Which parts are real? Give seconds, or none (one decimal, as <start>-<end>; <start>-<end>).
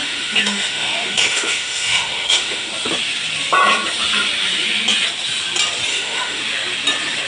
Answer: 2.7-5.9; 6.4-7.3